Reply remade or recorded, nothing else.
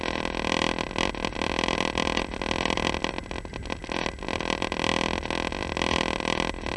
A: recorded